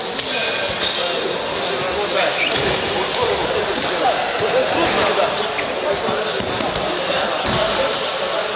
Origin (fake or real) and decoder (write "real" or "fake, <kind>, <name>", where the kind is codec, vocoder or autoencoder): real